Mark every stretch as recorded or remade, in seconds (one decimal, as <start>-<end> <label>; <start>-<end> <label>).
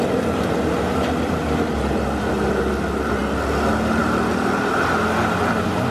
0.0-5.9 recorded